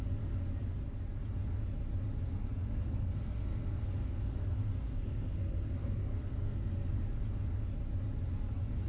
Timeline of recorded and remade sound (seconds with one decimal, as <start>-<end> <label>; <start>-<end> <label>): 0.0-2.3 recorded; 2.3-7.0 remade; 7.0-8.9 recorded